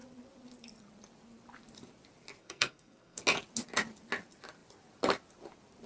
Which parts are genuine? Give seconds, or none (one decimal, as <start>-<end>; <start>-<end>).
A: 0.0-2.4; 3.2-5.9